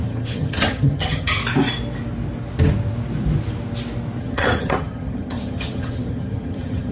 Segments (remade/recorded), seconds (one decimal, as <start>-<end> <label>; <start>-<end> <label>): 0.0-1.4 remade; 1.4-4.2 recorded; 4.2-6.9 remade